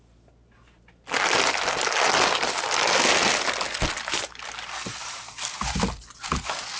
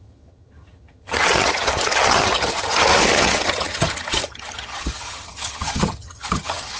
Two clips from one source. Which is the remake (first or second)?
second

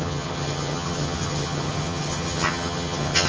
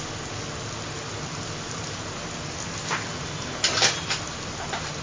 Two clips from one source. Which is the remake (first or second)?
first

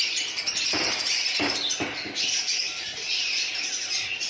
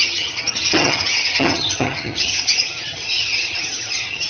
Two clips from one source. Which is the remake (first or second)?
second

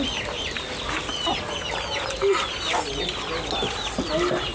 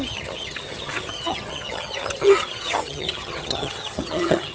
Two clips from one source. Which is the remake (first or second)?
second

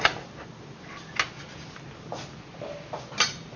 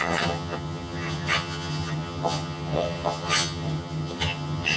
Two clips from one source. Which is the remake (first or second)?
second